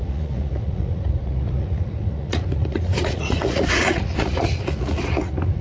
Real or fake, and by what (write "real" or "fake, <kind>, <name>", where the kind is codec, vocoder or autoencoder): fake, vocoder, Vocos